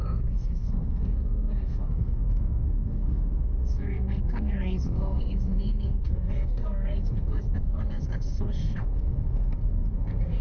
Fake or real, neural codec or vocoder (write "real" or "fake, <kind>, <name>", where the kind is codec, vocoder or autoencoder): fake, codec, SNAC